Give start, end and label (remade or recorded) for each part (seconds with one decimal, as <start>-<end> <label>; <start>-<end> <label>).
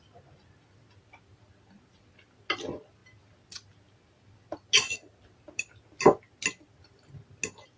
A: 0.0-7.8 recorded